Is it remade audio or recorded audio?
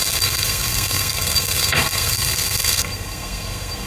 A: remade